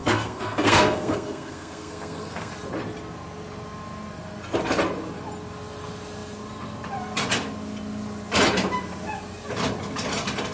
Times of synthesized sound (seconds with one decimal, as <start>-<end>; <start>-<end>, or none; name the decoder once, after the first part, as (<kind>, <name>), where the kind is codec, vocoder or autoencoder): 0.0-2.5 (codec, SNAC)